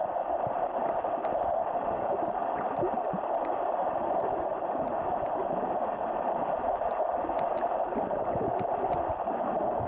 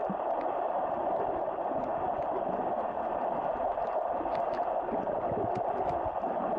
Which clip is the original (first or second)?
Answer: second